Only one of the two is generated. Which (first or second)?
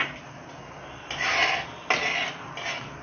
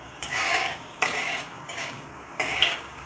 second